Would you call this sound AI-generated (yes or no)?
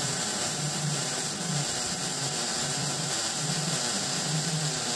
yes